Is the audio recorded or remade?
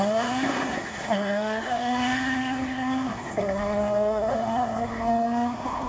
remade